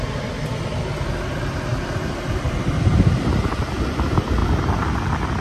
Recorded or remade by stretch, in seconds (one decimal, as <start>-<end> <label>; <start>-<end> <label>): 0.0-1.7 recorded; 1.7-2.9 remade; 2.9-5.4 recorded